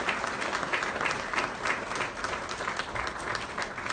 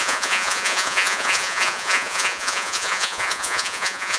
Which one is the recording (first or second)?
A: first